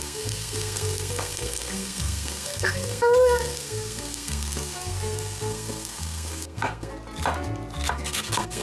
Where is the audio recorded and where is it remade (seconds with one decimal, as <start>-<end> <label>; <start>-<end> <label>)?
0.0-6.9 remade; 6.9-7.9 recorded; 7.9-8.6 remade